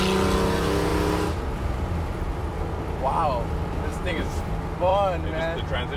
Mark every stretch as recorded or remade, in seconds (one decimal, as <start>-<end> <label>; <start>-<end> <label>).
0.0-3.9 recorded; 3.9-4.4 remade; 4.4-6.0 recorded